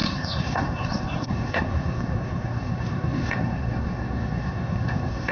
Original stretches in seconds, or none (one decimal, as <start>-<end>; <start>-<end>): none